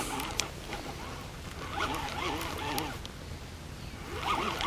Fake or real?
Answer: real